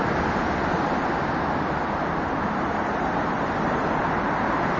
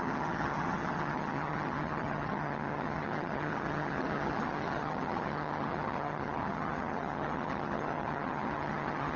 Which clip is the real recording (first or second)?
first